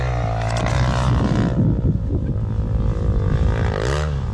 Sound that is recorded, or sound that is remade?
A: recorded